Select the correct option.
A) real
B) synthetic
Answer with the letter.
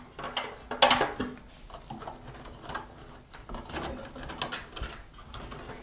A